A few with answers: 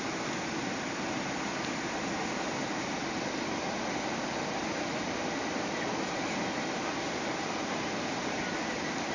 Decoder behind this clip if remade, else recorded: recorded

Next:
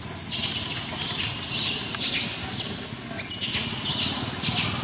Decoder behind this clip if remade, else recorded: recorded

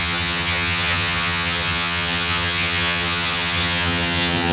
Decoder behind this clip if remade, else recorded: remade, vocoder, HiFi-GAN